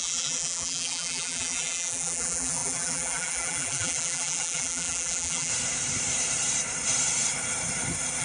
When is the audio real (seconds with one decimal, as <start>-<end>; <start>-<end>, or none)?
5.5-8.2

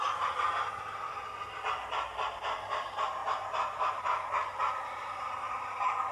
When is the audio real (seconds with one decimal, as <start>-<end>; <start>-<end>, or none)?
0.0-3.2; 5.6-6.1

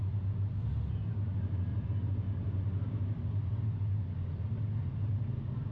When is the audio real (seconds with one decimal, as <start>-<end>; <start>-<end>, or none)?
0.0-1.7; 3.8-5.7

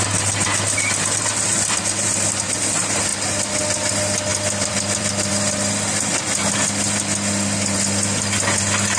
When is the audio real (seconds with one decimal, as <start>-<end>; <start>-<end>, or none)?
0.0-4.3; 5.3-9.0

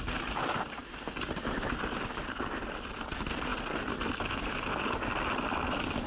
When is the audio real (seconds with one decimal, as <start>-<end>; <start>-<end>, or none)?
0.8-1.8